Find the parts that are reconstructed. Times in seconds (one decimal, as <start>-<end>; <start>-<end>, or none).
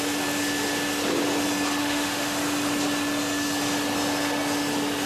1.8-2.4